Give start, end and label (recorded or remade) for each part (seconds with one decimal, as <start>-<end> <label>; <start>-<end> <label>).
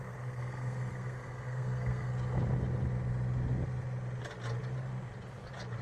0.0-2.1 remade; 2.1-5.8 recorded